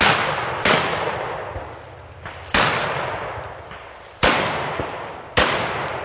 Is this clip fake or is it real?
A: fake